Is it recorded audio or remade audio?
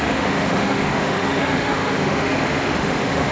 remade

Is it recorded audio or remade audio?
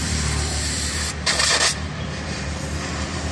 remade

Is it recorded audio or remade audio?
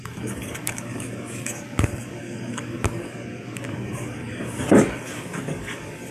remade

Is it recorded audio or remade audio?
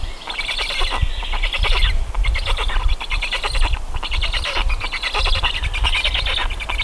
recorded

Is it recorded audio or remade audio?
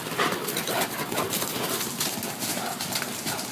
recorded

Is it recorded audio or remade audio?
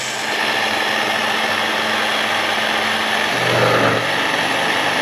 recorded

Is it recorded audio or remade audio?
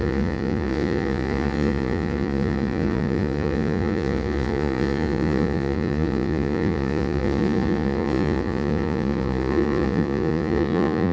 remade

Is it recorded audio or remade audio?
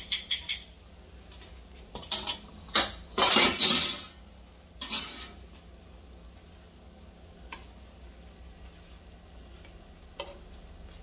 recorded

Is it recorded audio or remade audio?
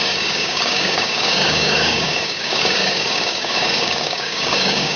remade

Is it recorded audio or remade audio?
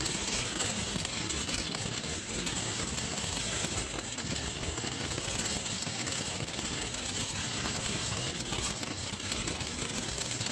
remade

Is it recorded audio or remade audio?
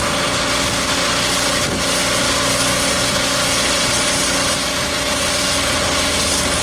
recorded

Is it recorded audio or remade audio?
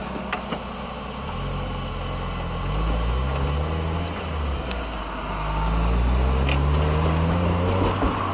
recorded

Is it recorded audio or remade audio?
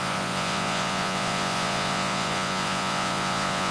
remade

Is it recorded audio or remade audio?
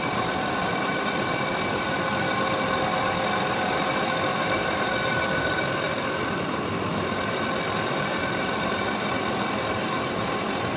recorded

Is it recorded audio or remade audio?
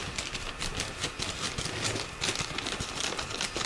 recorded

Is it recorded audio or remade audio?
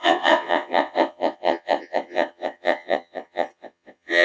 remade